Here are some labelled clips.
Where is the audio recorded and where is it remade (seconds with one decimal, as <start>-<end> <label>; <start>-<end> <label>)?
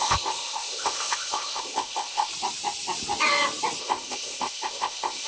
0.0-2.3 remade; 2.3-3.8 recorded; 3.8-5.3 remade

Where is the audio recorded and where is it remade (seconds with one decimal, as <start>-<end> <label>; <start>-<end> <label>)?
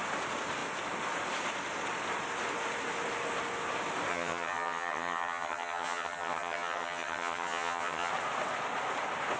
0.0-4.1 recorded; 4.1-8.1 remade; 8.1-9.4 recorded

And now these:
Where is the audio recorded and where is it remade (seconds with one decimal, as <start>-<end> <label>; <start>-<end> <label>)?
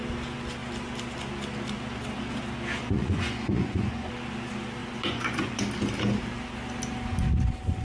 0.0-2.8 recorded; 2.8-4.1 remade; 4.1-4.8 recorded; 4.8-5.6 remade; 5.6-7.8 recorded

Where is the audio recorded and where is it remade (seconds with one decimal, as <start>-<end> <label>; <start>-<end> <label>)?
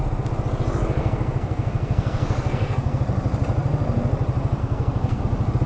0.0-1.0 recorded; 1.0-3.0 remade; 3.0-4.6 recorded; 4.6-5.2 remade; 5.2-5.7 recorded